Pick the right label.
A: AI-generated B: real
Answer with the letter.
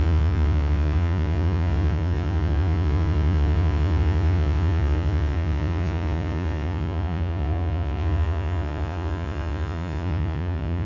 A